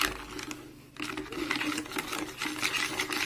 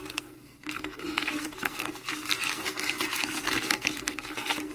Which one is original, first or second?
first